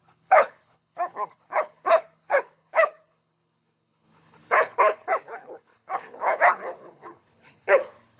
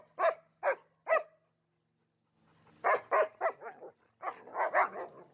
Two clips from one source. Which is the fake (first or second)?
first